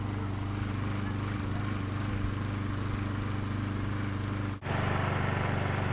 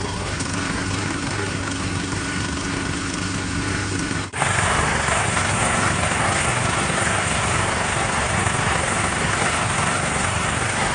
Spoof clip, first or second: second